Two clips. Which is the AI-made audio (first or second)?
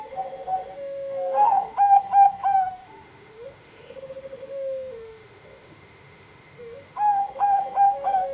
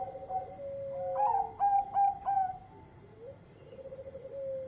first